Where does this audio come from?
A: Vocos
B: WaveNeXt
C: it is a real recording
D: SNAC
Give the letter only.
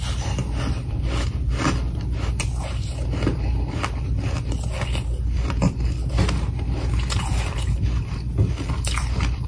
C